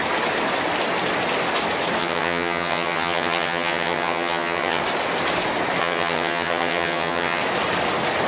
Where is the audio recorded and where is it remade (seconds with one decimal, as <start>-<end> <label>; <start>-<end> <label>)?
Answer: 0.0-2.0 recorded; 2.0-4.8 remade; 4.8-5.8 recorded; 5.8-7.4 remade; 7.4-8.3 recorded